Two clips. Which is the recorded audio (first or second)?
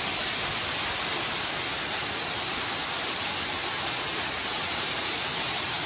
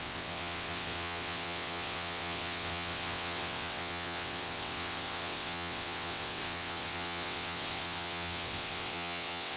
first